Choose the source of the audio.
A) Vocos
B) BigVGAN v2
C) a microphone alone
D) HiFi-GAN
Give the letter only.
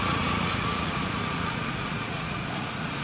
A